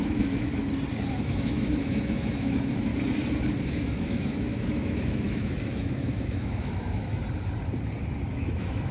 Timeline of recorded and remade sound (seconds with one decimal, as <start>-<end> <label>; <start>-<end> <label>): 0.0-0.5 remade; 0.5-1.1 recorded; 1.1-2.9 remade; 2.9-3.6 recorded; 3.6-7.2 remade; 7.2-8.3 recorded; 8.3-8.9 remade